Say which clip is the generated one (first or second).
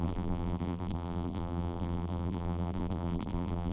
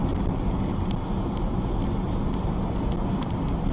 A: first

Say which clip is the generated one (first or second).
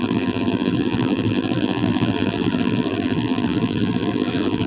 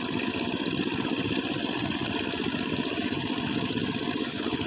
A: first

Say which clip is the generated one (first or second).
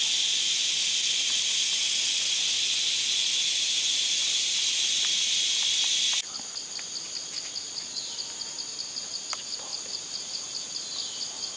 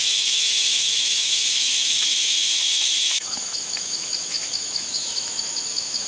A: second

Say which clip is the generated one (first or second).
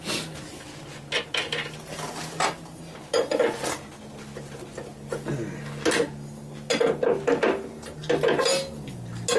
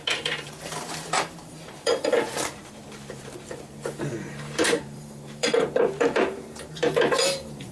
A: second